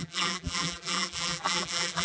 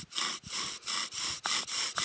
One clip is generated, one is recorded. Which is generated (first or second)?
first